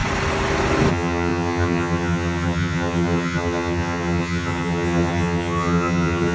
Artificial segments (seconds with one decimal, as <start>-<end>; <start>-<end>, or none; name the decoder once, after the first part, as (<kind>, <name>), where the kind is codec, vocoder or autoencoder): 0.9-6.3 (vocoder, HiFi-GAN)